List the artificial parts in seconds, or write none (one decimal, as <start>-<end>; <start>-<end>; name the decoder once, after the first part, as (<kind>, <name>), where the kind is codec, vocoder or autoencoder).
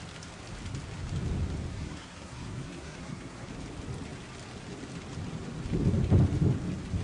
1.7-3.5 (codec, SNAC)